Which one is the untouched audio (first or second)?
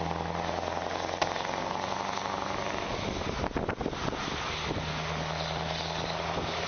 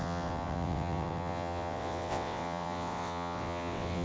first